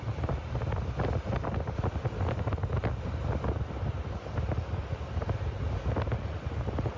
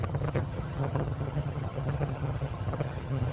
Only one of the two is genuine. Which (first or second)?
first